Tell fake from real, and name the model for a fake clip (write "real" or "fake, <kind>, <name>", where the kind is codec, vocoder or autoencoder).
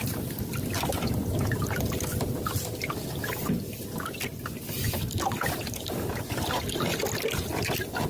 real